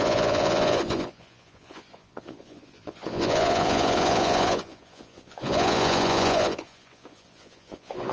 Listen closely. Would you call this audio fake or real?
fake